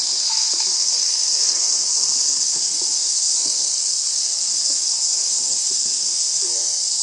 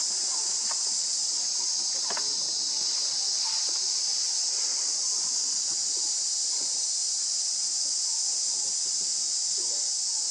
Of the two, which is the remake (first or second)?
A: first